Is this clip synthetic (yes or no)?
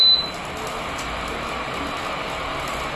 no